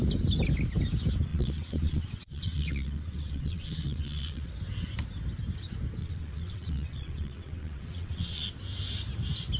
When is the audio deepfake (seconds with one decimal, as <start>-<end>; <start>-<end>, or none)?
1.3-4.5; 6.0-8.5